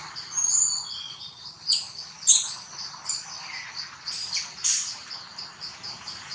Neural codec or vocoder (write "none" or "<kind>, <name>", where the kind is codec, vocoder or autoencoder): none